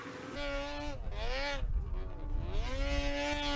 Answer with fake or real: real